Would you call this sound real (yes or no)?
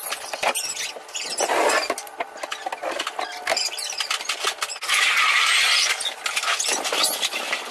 yes